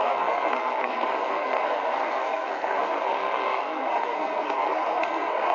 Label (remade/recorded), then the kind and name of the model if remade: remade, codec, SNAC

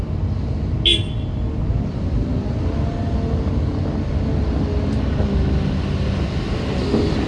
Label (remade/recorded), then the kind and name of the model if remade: recorded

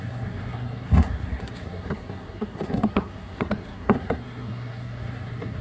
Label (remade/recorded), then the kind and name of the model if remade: remade, codec, SNAC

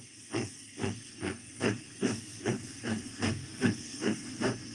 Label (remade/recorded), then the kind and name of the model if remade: remade, codec, SNAC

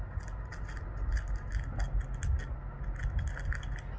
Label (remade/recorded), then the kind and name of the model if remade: recorded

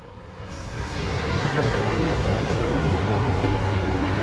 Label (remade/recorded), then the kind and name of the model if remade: remade, codec, SNAC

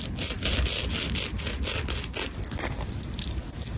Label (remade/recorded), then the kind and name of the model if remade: recorded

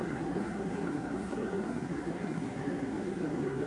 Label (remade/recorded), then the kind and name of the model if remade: remade, codec, SNAC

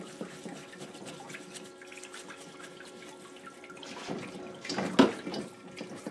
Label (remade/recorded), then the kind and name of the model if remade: recorded